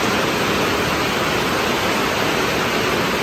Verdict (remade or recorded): recorded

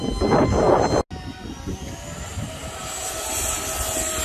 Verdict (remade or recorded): recorded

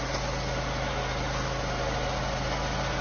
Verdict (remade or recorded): recorded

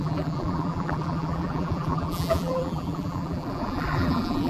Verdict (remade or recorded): remade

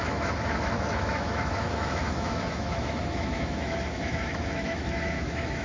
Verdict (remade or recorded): remade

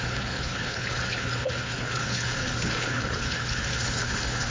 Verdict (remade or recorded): remade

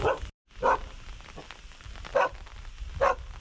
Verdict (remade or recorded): recorded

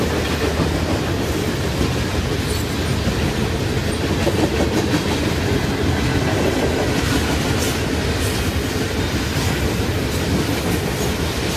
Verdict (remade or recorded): recorded